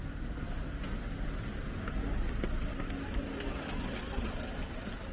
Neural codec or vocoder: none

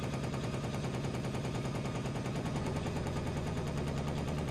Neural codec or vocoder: vocoder, Vocos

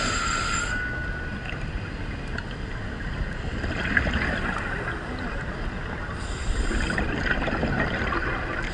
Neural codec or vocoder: none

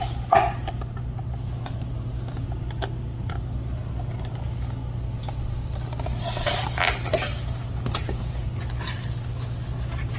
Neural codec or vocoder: none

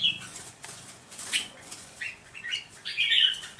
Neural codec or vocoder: vocoder, Vocos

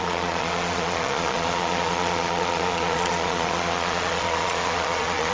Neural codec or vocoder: vocoder, Vocos